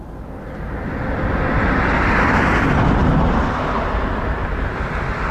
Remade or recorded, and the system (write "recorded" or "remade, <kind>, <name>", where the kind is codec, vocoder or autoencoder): recorded